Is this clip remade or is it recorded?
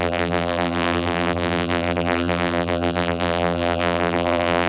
remade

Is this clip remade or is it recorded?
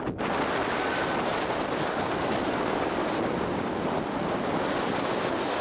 recorded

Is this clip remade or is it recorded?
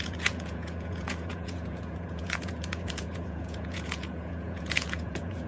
remade